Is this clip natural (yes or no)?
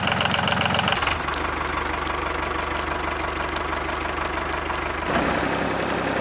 yes